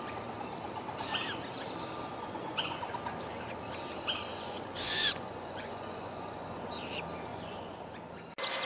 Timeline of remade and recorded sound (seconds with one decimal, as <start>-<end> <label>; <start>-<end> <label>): 0.0-2.1 recorded; 2.1-2.8 remade; 2.8-4.3 recorded; 4.3-6.7 remade; 6.7-7.3 recorded; 7.3-7.8 remade; 7.8-8.7 recorded